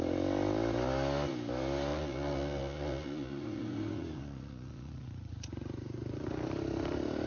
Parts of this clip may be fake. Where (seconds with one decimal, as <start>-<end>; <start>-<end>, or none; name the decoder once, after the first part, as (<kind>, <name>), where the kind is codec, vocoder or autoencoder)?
1.9-6.3 (vocoder, Vocos)